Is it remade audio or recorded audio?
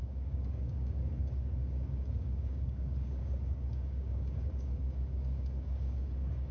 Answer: remade